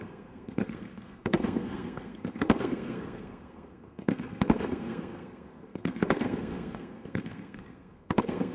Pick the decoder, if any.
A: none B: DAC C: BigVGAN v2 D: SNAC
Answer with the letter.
D